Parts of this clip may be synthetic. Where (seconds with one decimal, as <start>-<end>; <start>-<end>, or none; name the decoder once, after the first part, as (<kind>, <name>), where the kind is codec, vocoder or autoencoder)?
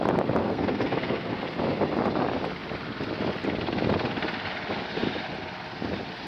0.4-1.4 (codec, SNAC)